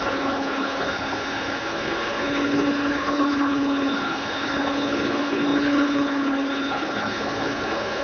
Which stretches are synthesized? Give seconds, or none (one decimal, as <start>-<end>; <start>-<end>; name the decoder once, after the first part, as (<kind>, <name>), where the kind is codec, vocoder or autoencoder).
0.0-8.0 (codec, HILCodec)